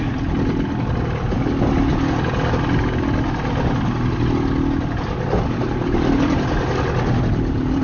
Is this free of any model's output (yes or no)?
yes